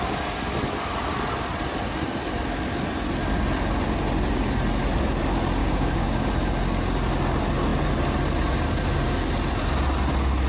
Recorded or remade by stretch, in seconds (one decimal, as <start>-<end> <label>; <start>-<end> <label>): 0.0-5.6 recorded; 5.6-6.3 remade; 6.3-10.5 recorded